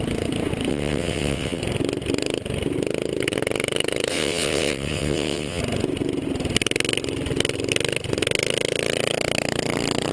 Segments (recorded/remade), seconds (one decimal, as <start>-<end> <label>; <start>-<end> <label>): 0.0-0.7 recorded; 0.7-1.6 remade; 1.6-4.1 recorded; 4.1-5.6 remade; 5.6-10.1 recorded